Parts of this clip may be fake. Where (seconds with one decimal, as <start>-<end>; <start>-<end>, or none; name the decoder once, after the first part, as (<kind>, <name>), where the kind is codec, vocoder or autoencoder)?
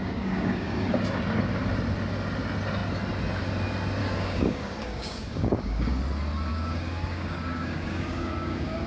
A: 0.0-1.0 (codec, DAC); 4.0-6.0; 6.5-8.9